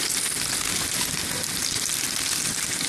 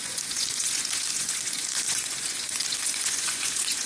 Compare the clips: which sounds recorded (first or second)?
first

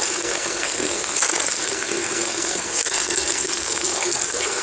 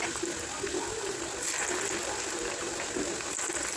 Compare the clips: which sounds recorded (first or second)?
second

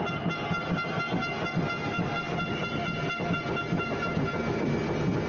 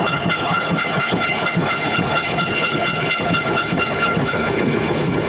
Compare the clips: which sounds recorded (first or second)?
first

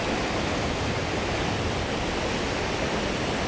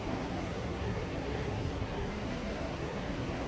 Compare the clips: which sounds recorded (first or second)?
first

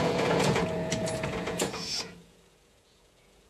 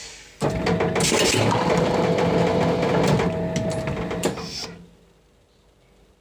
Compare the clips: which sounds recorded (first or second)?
second